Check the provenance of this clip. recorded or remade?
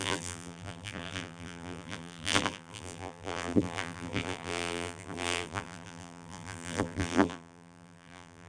remade